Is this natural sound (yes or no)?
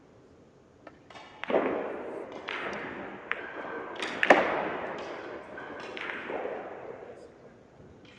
yes